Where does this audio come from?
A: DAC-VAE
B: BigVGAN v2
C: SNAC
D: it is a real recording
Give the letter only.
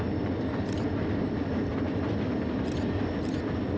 B